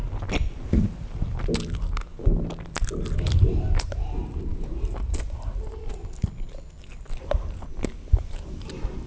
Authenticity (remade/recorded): recorded